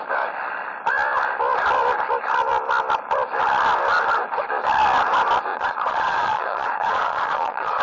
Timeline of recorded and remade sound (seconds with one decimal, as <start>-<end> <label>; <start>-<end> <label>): 0.0-5.5 recorded; 5.5-7.8 remade